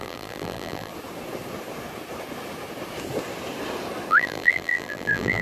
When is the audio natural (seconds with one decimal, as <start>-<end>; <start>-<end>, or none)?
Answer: 0.9-4.1